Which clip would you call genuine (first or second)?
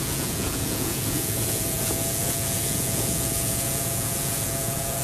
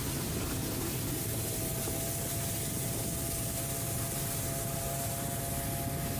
second